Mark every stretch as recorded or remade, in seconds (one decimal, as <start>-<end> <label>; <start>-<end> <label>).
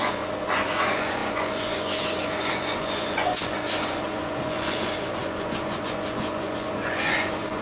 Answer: 0.0-7.6 remade